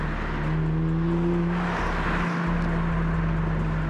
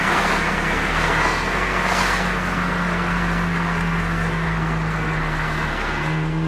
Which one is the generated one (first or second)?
second